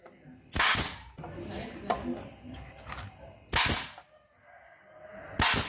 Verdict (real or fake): real